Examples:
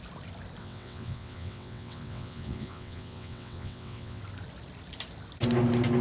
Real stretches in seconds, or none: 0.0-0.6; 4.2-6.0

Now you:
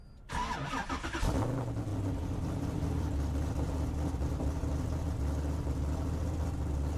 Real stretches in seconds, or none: 0.0-0.4; 1.2-1.9; 4.7-7.0

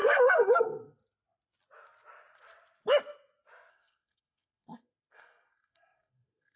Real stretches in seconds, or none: 1.0-3.7

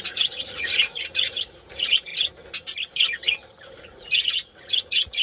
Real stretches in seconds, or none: 2.1-3.8

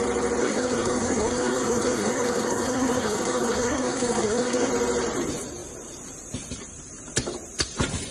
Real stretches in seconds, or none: 0.0-0.4; 4.7-8.1